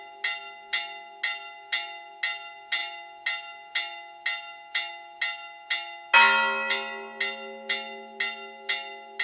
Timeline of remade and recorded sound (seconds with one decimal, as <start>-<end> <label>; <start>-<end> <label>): 0.0-9.2 recorded